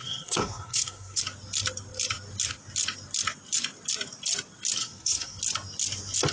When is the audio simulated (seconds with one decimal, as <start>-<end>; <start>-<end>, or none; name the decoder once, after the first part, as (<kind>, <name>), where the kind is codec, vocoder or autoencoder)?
0.0-1.2 (codec, SNAC); 4.8-5.4

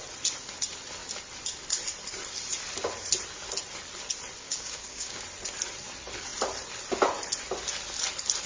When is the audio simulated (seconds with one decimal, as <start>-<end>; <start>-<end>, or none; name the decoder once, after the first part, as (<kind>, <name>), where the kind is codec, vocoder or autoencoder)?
4.4-5.2 (codec, DAC)

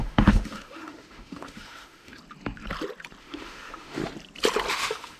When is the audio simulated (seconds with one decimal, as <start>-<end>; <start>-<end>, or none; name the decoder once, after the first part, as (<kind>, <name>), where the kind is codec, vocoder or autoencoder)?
0.0-2.2 (autoencoder, DAC-VAE); 3.2-4.0; 4.7-5.2

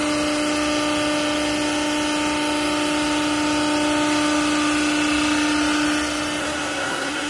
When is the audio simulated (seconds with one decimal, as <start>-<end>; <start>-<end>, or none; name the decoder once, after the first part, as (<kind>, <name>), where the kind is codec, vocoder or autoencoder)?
6.4-7.3 (codec, SNAC)

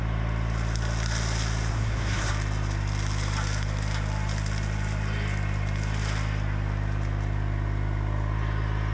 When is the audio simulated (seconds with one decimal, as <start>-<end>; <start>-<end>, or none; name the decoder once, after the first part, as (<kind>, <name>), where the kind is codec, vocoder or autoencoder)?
1.7-2.3 (codec, SNAC)